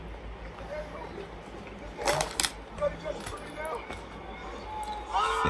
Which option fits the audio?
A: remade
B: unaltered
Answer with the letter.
B